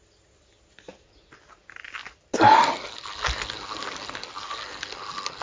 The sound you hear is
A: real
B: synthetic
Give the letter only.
A